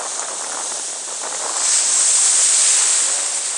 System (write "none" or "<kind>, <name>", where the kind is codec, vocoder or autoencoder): none